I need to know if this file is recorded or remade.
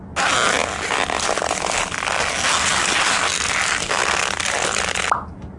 recorded